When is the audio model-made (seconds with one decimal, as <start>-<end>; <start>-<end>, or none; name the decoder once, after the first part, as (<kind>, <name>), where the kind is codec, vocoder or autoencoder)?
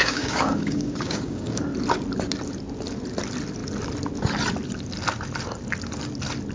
0.0-1.6 (codec, DAC)